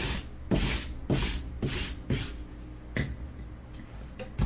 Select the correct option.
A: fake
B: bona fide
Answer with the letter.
B